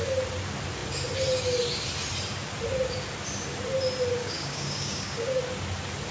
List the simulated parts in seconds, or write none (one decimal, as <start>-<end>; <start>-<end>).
4.2-5.4